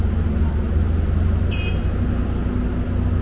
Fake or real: real